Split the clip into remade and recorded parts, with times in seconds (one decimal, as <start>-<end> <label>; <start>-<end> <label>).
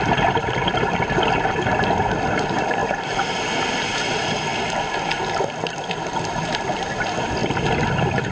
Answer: 0.0-4.5 remade; 4.5-6.0 recorded; 6.0-8.3 remade